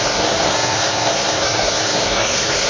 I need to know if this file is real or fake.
fake